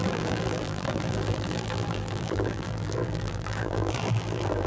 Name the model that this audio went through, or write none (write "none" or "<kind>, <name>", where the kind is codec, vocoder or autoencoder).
vocoder, BigVGAN v2